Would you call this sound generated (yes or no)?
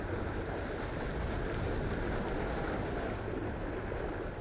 no